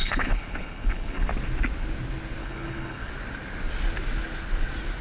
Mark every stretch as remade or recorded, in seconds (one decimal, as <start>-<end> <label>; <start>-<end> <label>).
0.0-1.3 remade; 1.3-2.4 recorded; 2.4-3.1 remade; 3.1-5.0 recorded